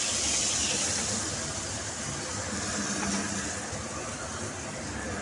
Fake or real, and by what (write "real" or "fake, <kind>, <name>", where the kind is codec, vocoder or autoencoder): real